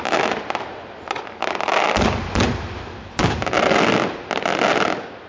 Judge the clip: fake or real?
real